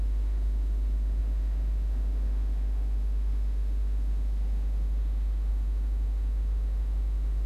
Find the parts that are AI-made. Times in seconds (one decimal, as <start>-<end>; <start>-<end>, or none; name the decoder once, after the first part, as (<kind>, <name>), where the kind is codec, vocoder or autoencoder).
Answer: 0.0-7.5 (autoencoder, DAC-VAE)